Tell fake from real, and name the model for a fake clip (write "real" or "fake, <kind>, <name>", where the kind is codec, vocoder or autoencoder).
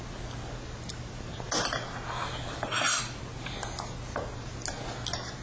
real